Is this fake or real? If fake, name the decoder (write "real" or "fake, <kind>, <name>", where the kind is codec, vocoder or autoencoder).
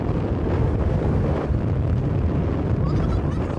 real